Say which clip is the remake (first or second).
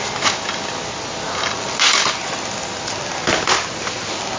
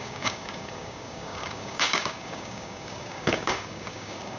second